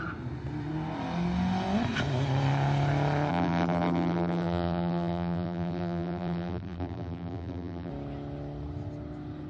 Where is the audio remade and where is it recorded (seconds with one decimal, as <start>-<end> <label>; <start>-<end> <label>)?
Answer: 0.0-3.3 recorded; 3.3-7.9 remade; 7.9-9.5 recorded